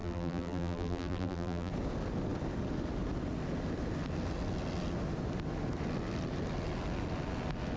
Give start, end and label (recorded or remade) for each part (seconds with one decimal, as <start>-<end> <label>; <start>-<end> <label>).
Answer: 0.0-1.7 remade; 1.7-7.8 recorded